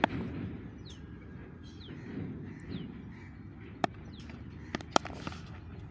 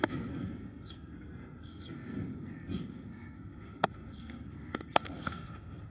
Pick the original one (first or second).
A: first